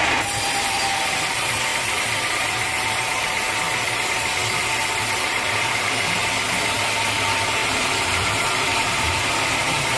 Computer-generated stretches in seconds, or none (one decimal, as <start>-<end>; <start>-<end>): 7.6-9.3